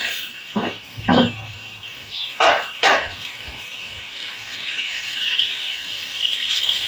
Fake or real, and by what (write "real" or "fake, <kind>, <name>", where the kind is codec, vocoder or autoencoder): fake, codec, DAC